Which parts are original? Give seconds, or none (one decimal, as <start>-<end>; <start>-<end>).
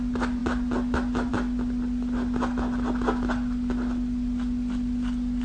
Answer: 0.0-5.4